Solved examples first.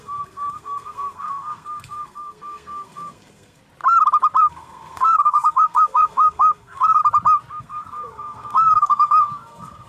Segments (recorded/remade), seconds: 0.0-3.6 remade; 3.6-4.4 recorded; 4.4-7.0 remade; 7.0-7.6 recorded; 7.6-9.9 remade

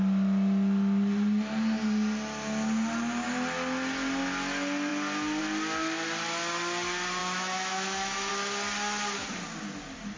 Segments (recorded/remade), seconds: 0.0-7.2 recorded; 7.2-8.3 remade; 8.3-10.2 recorded

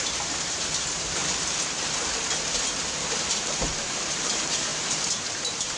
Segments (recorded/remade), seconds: 0.0-1.2 remade; 1.2-3.2 recorded; 3.2-5.8 remade

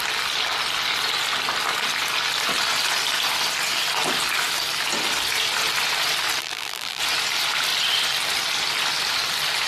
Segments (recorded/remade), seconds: 0.0-6.4 recorded; 6.4-7.0 remade; 7.0-9.7 recorded

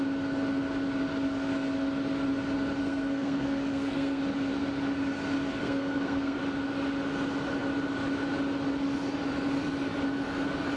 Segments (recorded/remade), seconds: 0.0-2.8 recorded; 2.8-4.2 remade; 4.2-5.6 recorded; 5.6-6.4 remade; 6.4-10.8 recorded

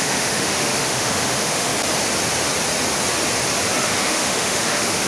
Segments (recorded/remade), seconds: 0.0-1.7 remade; 1.7-3.8 recorded; 3.8-5.1 remade